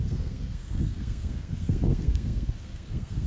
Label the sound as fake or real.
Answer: fake